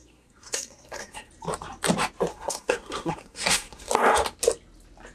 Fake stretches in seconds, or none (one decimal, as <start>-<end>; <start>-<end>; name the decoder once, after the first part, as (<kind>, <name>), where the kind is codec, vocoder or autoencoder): 0.0-1.3 (codec, SNAC); 2.3-3.9